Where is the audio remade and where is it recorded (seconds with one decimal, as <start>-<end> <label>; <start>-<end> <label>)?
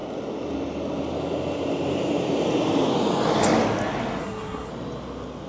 0.0-4.2 recorded; 4.2-4.7 remade; 4.7-5.5 recorded